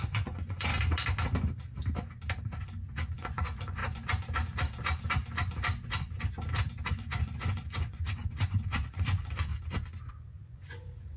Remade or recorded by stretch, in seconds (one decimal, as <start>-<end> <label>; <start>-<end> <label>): 0.0-0.7 remade; 0.7-2.6 recorded; 2.6-3.8 remade; 3.8-6.9 recorded; 6.9-9.5 remade; 9.5-10.1 recorded; 10.1-11.2 remade